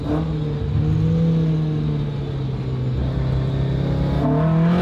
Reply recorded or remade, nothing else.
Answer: recorded